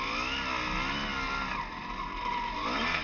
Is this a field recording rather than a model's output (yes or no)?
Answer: yes